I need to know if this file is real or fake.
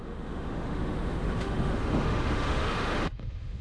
fake